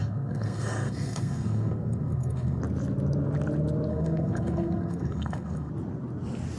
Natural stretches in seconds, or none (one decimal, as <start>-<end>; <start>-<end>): 2.6-3.9; 5.7-6.6